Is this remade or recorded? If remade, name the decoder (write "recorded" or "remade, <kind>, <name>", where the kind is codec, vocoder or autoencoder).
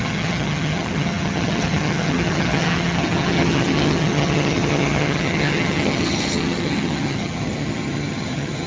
remade, vocoder, HiFi-GAN